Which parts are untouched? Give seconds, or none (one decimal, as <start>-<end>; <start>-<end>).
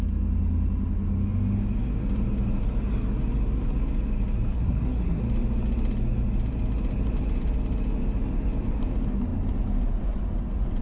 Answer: 0.0-4.5; 5.2-10.8